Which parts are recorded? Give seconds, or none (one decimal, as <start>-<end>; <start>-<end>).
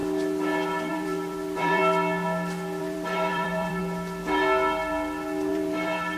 0.0-0.9; 1.8-2.8; 3.8-5.5